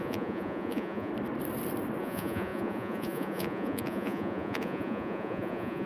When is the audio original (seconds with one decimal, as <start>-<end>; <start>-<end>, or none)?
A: 1.1-2.0